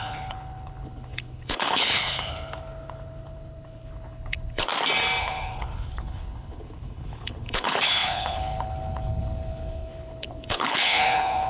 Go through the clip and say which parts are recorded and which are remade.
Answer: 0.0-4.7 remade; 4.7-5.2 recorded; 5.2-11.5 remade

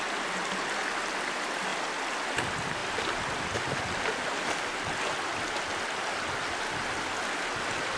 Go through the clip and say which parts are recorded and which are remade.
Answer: 0.0-8.0 recorded

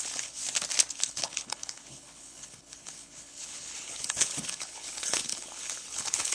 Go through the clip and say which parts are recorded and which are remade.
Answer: 0.0-0.4 remade; 0.4-0.9 recorded; 0.9-6.3 remade

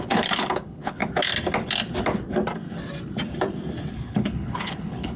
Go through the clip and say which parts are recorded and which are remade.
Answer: 0.0-1.0 remade; 1.0-3.9 recorded; 3.9-5.2 remade

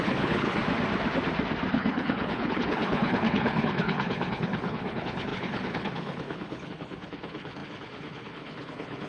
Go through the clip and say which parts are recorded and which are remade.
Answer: 0.0-0.6 remade; 0.6-1.7 recorded; 1.7-9.1 remade

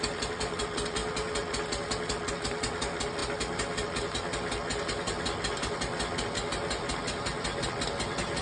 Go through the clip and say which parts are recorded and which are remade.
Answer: 0.0-8.4 recorded

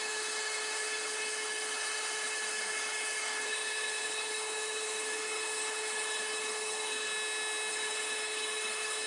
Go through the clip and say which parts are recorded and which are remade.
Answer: 0.0-7.1 remade; 7.1-7.7 recorded; 7.7-9.1 remade

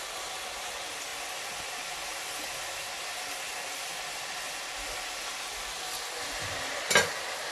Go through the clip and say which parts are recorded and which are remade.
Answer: 0.0-7.5 recorded